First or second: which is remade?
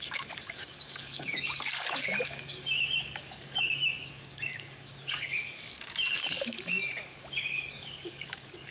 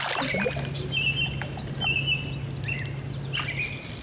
first